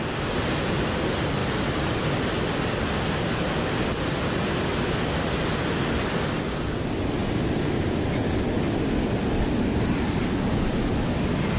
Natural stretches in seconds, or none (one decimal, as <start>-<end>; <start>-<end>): 0.0-11.6